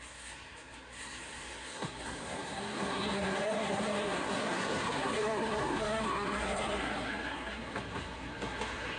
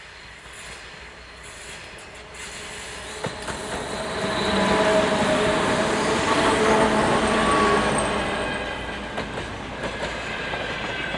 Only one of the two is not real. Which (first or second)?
first